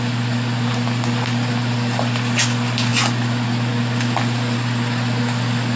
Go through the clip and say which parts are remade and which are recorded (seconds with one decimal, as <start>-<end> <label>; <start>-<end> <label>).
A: 0.0-5.8 recorded